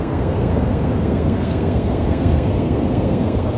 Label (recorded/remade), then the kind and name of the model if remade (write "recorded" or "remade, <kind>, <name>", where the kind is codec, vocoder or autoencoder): remade, codec, SNAC